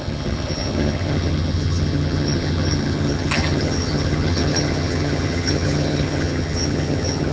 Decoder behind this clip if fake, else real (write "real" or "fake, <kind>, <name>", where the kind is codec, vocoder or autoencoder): fake, vocoder, HiFi-GAN